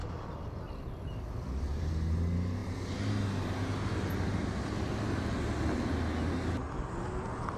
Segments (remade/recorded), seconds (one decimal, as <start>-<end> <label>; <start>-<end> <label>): 0.0-1.9 remade; 1.9-7.6 recorded